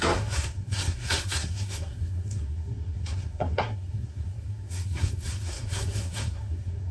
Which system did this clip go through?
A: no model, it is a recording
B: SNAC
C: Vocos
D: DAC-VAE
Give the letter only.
B